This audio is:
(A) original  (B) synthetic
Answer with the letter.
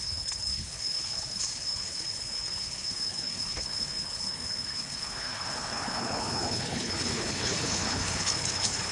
B